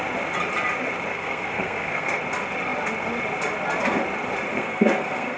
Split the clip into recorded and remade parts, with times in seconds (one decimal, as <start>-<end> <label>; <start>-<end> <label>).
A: 0.0-1.1 recorded; 1.1-2.2 remade; 2.2-4.5 recorded; 4.5-5.4 remade

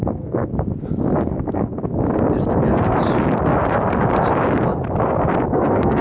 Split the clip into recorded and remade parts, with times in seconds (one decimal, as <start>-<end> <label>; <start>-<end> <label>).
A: 0.0-0.5 remade; 0.5-1.2 recorded; 1.2-1.9 remade; 1.9-5.5 recorded; 5.5-6.0 remade

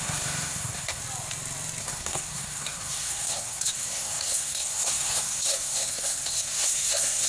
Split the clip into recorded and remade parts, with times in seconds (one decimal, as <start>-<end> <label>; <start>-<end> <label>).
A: 0.0-1.0 remade; 1.0-1.8 recorded; 1.8-7.3 remade